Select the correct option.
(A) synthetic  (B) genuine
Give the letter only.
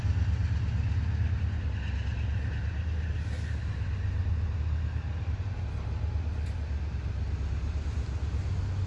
B